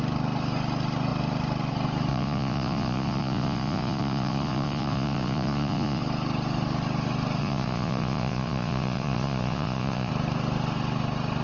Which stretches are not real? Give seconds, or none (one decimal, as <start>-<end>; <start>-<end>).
2.1-6.0; 7.4-10.1